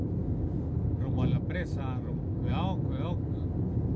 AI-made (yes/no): no